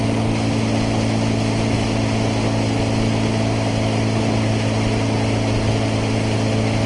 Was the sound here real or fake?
real